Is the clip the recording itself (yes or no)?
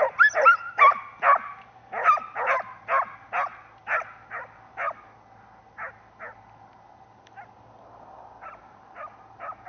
yes